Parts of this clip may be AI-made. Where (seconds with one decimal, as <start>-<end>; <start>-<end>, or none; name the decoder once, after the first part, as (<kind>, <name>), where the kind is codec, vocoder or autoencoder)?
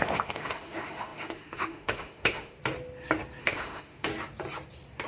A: 0.0-2.6 (autoencoder, DAC-VAE); 3.4-4.1